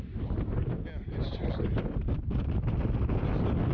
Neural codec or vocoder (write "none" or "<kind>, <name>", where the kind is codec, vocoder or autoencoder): none